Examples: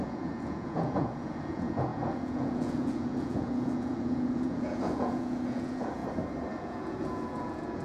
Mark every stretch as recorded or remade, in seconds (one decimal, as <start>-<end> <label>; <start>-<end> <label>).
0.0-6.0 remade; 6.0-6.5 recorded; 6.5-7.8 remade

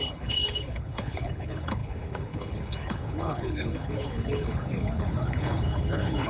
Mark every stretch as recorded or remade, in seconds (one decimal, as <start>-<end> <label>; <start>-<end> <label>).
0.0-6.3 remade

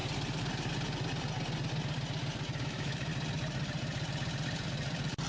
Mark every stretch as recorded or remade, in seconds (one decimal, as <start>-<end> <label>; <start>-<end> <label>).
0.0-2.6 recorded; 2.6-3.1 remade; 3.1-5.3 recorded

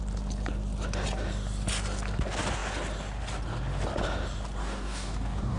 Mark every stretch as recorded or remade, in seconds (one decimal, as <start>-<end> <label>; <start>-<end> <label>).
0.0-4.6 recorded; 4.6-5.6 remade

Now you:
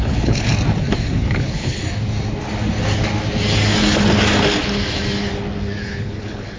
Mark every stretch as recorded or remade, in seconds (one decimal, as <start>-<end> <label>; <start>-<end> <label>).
0.0-0.5 remade; 0.5-1.1 recorded; 1.1-1.8 remade; 1.8-5.8 recorded; 5.8-6.6 remade

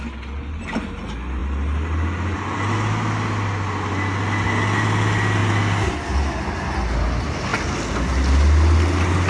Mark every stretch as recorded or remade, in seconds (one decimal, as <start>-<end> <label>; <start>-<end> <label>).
0.0-9.3 recorded

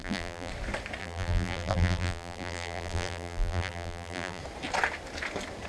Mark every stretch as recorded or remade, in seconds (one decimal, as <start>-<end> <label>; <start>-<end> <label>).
0.0-0.5 remade; 0.5-1.0 recorded; 1.0-4.4 remade; 4.4-5.7 recorded